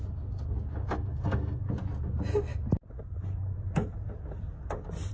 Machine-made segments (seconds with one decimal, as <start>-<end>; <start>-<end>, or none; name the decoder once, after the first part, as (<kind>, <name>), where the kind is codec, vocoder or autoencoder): 0.8-1.6 (codec, SNAC)